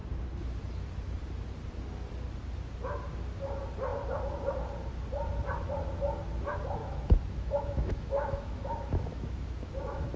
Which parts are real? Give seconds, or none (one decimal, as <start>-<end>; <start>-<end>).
0.0-6.8